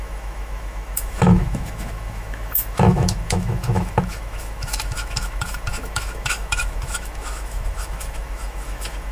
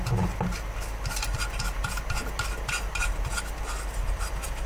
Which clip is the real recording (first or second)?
second